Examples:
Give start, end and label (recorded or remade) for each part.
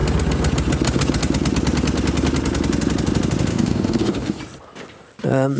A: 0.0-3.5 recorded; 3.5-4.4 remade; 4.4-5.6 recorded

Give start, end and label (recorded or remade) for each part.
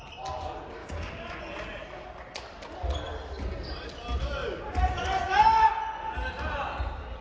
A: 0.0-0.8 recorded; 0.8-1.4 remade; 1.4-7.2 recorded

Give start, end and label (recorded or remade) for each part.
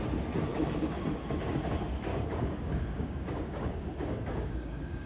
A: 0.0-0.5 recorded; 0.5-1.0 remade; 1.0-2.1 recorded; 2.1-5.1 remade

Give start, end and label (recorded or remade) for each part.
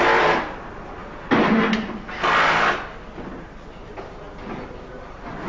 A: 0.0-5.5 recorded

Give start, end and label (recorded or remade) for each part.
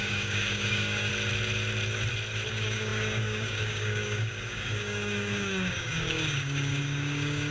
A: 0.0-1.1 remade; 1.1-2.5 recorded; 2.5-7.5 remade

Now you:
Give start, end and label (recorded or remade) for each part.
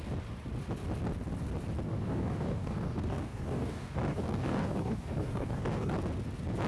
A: 0.0-1.9 recorded; 1.9-5.9 remade; 5.9-6.7 recorded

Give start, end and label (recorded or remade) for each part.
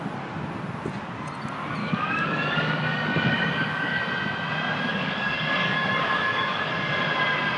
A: 0.0-1.8 recorded; 1.8-4.0 remade; 4.0-4.9 recorded; 4.9-6.7 remade; 6.7-7.6 recorded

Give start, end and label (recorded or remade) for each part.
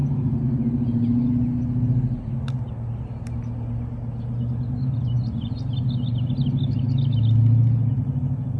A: 0.0-8.6 recorded